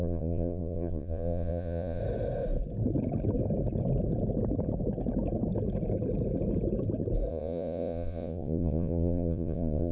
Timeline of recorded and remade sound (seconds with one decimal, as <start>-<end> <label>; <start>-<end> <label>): 0.0-2.0 remade; 2.0-7.3 recorded; 7.3-9.9 remade